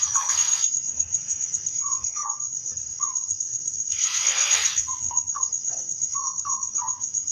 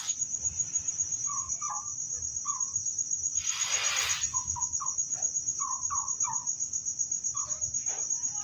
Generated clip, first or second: first